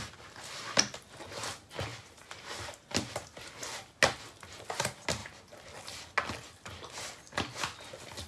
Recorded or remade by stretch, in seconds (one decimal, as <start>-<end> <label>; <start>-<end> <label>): 0.0-8.3 recorded